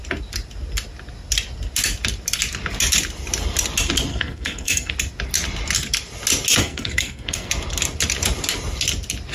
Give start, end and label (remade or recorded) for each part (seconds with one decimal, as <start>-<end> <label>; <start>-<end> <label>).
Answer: 0.0-4.1 recorded; 4.1-4.9 remade; 4.9-6.6 recorded; 6.6-7.5 remade; 7.5-9.3 recorded